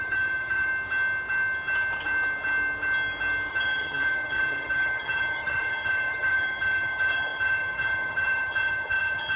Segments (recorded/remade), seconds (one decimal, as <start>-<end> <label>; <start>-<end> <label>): 0.0-0.7 remade; 0.7-3.5 recorded; 3.5-9.4 remade